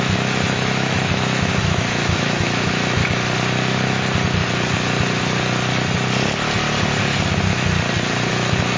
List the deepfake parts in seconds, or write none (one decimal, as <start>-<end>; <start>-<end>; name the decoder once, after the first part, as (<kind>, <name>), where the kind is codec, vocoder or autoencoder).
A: 0.0-3.0 (autoencoder, DAC-VAE); 8.3-8.8